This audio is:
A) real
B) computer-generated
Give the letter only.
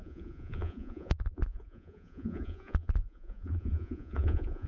B